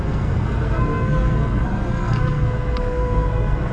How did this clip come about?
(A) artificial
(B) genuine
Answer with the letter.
A